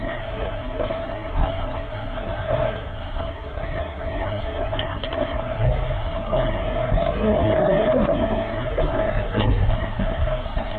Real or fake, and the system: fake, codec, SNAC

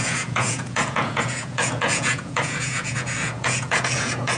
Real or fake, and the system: fake, vocoder, Vocos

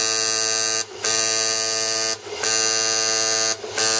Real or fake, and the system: real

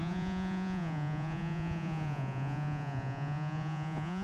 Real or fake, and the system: fake, vocoder, Vocos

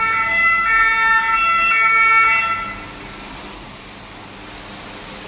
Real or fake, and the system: real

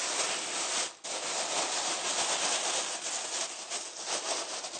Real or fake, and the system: real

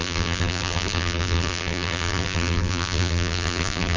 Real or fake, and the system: fake, vocoder, BigVGAN v2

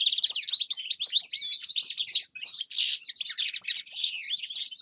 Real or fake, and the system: real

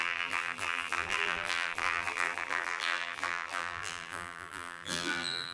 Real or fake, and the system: fake, vocoder, BigVGAN v2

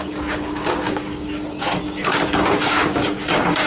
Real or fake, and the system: fake, codec, DAC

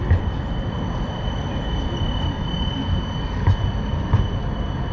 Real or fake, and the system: real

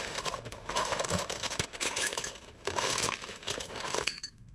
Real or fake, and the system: fake, autoencoder, DAC-VAE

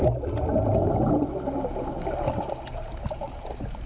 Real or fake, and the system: real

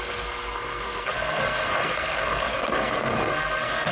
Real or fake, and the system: fake, codec, SNAC